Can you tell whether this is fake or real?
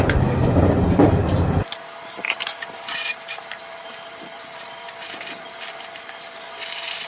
fake